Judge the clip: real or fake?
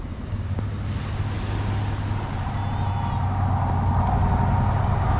real